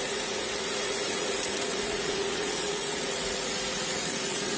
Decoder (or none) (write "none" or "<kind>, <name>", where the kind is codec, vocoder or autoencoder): vocoder, Vocos